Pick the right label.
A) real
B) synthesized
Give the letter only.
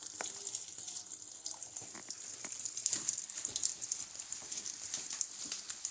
A